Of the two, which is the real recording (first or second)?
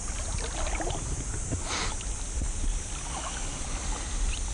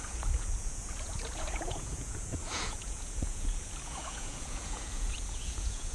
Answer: first